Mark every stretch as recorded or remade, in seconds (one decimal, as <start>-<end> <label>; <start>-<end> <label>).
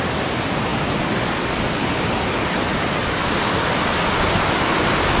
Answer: 0.0-5.2 recorded